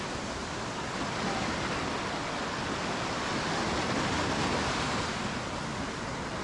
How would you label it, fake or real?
real